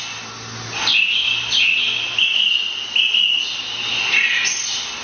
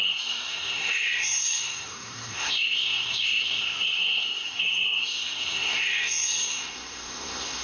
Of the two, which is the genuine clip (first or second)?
first